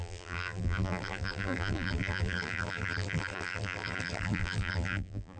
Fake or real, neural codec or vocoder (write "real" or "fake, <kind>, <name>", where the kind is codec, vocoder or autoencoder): fake, vocoder, BigVGAN v2